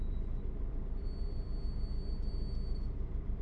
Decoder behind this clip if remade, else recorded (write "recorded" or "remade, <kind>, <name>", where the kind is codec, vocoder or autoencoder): recorded